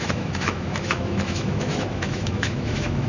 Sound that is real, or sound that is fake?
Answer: fake